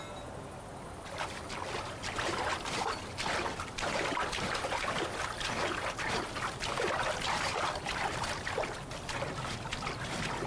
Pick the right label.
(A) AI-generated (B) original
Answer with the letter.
B